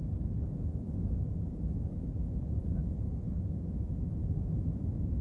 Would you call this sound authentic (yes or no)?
no